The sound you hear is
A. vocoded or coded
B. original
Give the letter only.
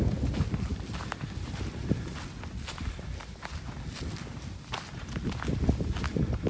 B